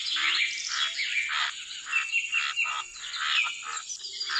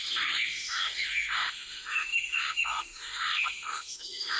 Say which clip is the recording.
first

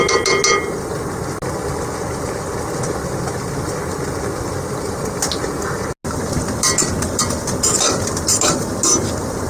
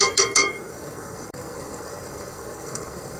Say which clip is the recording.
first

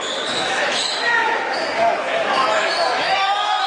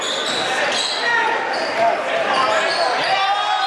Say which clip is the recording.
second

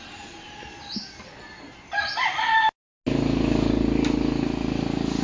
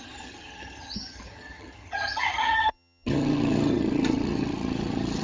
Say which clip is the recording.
first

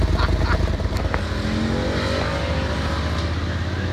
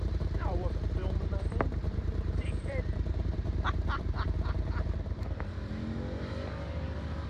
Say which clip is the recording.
first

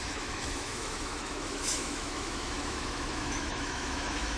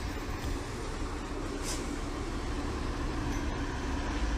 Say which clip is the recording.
second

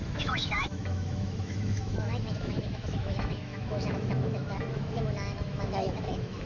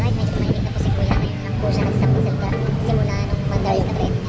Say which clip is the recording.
second